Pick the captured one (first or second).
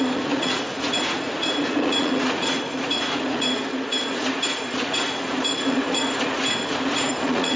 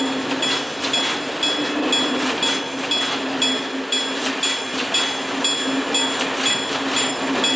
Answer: second